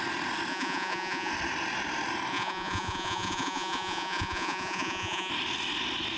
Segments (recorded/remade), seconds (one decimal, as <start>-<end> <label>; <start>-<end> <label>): 0.0-0.5 recorded; 0.5-1.3 remade; 1.3-2.3 recorded; 2.3-5.3 remade; 5.3-6.2 recorded